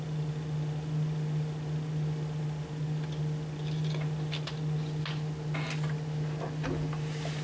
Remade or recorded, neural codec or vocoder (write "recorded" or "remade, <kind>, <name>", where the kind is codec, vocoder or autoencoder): recorded